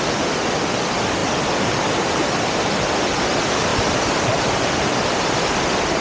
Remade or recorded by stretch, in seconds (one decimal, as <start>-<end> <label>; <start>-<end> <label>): 0.0-1.2 recorded; 1.2-1.9 remade; 1.9-3.7 recorded; 3.7-6.0 remade

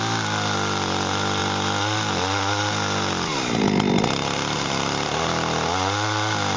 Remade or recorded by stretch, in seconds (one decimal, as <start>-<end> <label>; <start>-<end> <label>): 0.0-6.6 recorded

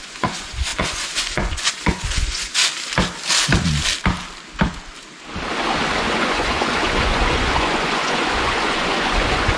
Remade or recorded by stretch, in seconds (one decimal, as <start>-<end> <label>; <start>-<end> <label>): 0.0-2.6 remade; 2.6-6.0 recorded; 6.0-9.6 remade

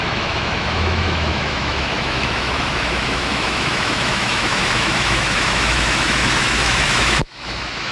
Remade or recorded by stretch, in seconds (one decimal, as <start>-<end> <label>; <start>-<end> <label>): 0.0-7.9 remade

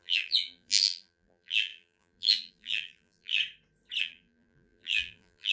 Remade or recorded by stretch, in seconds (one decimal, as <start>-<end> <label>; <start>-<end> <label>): 0.0-3.4 remade; 3.4-4.0 recorded; 4.0-5.5 remade